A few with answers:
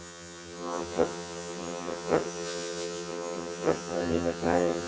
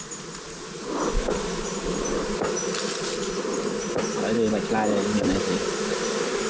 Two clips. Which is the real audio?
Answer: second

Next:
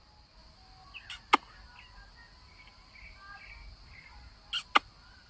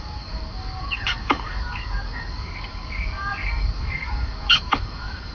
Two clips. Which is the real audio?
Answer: first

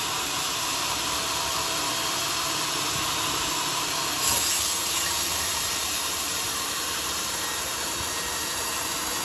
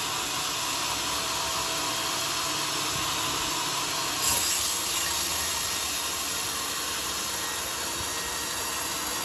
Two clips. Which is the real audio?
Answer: second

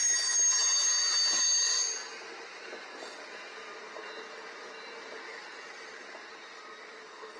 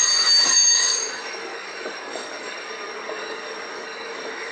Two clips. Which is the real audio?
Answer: first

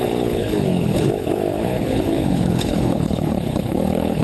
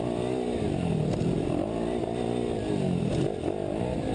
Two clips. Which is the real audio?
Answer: second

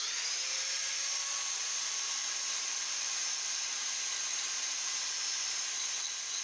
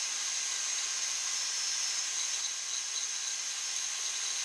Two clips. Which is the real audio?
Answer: second